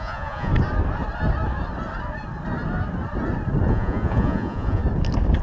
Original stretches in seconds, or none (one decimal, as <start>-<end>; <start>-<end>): 0.5-3.7; 4.8-5.4